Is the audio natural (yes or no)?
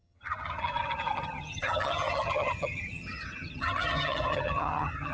no